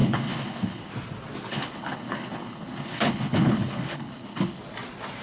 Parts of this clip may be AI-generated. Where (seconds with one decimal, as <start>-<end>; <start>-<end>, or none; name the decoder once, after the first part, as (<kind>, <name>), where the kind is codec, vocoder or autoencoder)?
0.0-0.9 (codec, HILCodec); 1.5-4.6